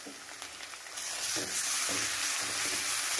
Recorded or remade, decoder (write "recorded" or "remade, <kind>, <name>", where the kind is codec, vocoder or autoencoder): recorded